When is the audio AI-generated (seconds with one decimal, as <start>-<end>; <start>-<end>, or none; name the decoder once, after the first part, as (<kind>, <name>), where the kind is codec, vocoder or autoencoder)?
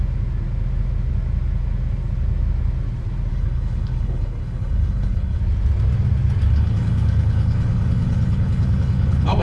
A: 3.3-5.4 (codec, HILCodec); 6.5-9.4